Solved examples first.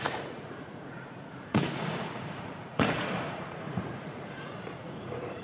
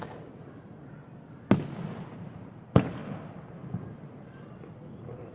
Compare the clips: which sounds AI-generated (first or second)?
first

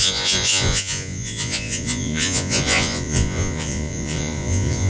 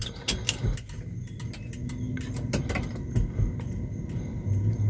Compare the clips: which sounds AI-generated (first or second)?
first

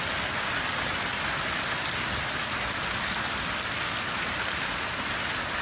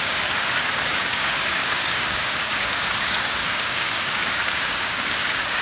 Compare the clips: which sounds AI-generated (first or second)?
second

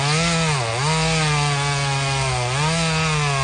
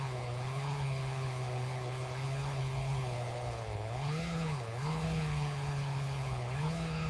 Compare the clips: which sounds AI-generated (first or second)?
second